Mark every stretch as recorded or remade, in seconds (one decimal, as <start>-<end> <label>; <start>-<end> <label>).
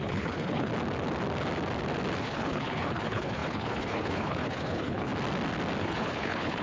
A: 0.0-0.7 remade; 0.7-2.2 recorded; 2.2-5.1 remade; 5.1-5.8 recorded; 5.8-6.6 remade